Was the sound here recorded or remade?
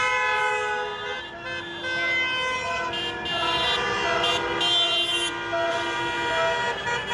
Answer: recorded